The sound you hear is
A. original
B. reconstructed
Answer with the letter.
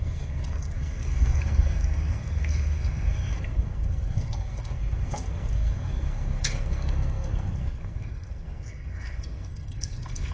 B